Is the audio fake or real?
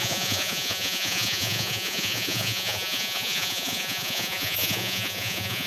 fake